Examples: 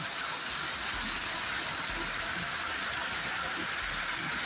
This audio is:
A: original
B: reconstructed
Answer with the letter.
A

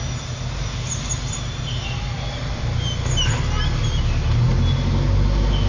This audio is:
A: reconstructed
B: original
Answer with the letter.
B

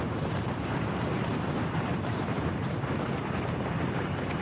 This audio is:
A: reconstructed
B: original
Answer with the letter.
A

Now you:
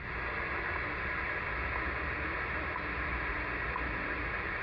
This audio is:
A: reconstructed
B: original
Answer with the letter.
B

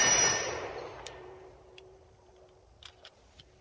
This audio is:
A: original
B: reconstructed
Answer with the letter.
B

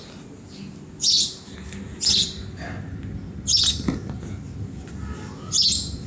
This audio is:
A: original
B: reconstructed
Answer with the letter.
A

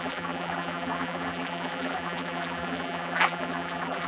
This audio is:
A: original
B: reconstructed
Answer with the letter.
B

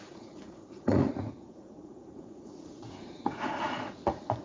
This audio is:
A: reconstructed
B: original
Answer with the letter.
A